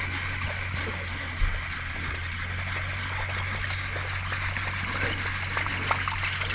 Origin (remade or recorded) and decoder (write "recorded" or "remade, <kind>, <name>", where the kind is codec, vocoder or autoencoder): recorded